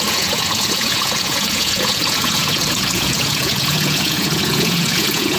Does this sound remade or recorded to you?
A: remade